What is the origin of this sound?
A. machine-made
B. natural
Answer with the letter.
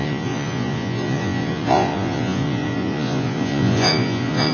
A